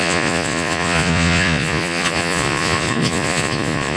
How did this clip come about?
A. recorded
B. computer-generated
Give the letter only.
B